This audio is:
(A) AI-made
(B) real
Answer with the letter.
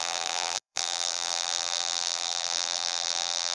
A